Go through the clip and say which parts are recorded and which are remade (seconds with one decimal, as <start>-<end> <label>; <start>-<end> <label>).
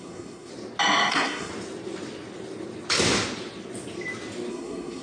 0.0-0.5 remade; 0.5-1.1 recorded; 1.1-1.5 remade; 1.5-4.5 recorded; 4.5-5.0 remade